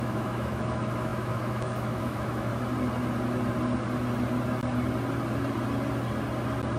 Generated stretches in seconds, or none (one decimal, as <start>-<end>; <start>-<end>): 0.0-2.5